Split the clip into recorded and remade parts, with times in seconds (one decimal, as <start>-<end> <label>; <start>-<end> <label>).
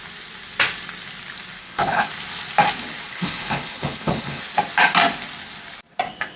0.0-1.6 recorded; 1.6-2.1 remade; 2.1-3.1 recorded; 3.1-4.4 remade; 4.4-6.4 recorded